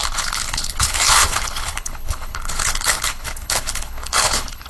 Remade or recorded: remade